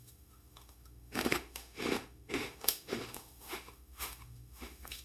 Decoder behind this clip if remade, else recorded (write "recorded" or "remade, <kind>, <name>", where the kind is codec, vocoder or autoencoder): remade, autoencoder, DAC-VAE